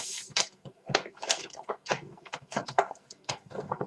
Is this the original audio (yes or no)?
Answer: no